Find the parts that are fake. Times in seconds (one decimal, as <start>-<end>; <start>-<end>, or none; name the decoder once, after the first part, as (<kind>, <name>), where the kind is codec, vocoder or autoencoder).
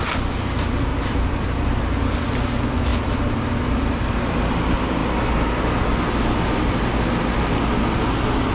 0.9-1.8 (vocoder, BigVGAN v2); 2.9-3.9